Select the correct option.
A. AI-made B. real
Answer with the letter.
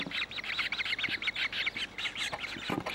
B